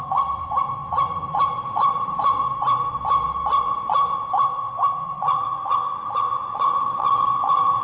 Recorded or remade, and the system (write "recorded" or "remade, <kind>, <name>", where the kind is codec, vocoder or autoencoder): remade, vocoder, WaveNeXt